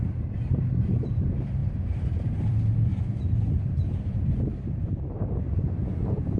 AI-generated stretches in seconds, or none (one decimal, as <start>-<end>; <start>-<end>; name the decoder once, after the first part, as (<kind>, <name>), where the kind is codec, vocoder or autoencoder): 0.0-2.9 (vocoder, BigVGAN v2); 3.9-6.4